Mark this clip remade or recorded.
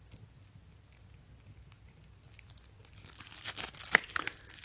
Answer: recorded